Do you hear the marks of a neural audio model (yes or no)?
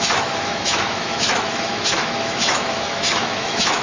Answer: yes